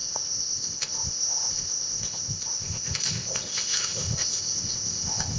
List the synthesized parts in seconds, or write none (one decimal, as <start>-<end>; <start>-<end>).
0.0-5.4